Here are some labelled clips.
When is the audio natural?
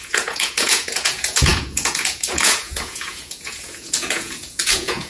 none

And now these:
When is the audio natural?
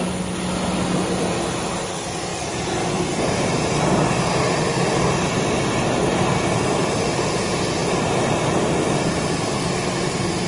0.0-10.5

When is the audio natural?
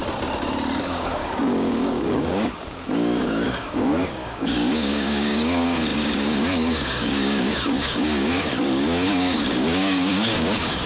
0.0-0.8